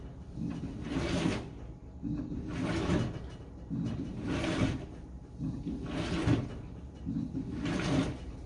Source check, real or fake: real